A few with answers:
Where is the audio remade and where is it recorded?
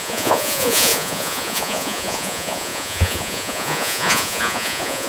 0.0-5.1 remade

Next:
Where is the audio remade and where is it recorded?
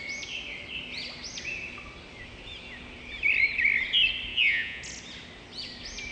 0.0-4.3 recorded; 4.3-4.8 remade; 4.8-6.1 recorded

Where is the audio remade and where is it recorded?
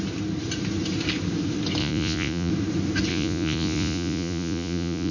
0.0-1.8 recorded; 1.8-2.5 remade; 2.5-3.1 recorded; 3.1-5.1 remade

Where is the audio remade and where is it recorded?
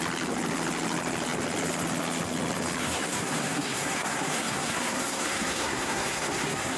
0.0-2.8 recorded; 2.8-6.8 remade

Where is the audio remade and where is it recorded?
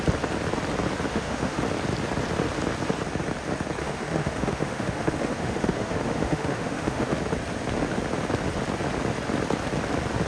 0.0-1.1 recorded; 1.1-1.6 remade; 1.6-3.8 recorded; 3.8-7.2 remade; 7.2-10.3 recorded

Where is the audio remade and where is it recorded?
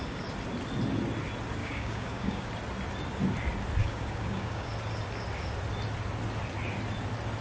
0.0-1.6 recorded; 1.6-2.5 remade; 2.5-3.8 recorded; 3.8-4.7 remade; 4.7-7.4 recorded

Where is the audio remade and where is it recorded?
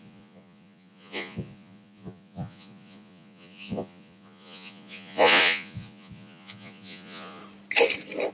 0.0-7.4 remade; 7.4-8.3 recorded